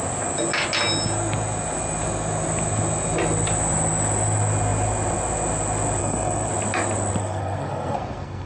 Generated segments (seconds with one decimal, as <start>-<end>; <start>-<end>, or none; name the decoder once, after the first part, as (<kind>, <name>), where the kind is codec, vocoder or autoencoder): 6.0-6.5 (codec, SNAC); 7.2-8.5